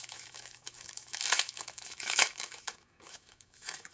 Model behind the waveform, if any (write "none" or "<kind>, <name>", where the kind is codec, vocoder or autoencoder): autoencoder, DAC-VAE